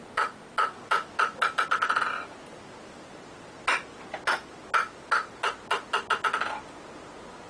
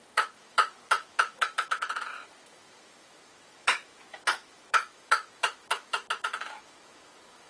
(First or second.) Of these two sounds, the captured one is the first